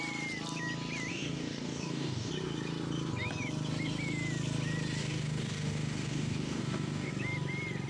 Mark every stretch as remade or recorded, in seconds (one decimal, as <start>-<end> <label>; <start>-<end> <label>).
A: 0.0-1.1 recorded; 1.1-2.3 remade; 2.3-5.0 recorded; 5.0-7.1 remade; 7.1-7.9 recorded